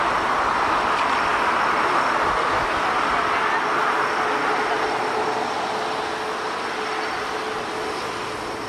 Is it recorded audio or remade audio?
recorded